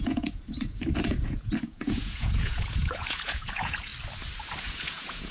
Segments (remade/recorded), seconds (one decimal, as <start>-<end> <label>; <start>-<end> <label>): 0.0-3.9 remade; 3.9-4.6 recorded; 4.6-5.3 remade